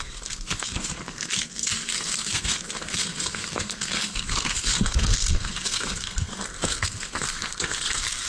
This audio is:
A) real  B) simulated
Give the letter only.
B